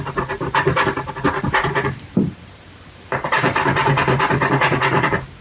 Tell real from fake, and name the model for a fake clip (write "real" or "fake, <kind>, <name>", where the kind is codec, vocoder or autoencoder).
fake, vocoder, BigVGAN v2